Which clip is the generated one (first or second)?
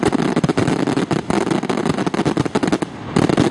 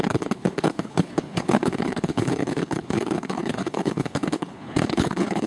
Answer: second